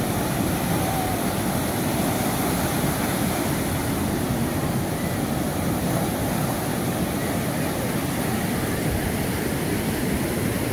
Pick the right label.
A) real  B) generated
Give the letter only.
A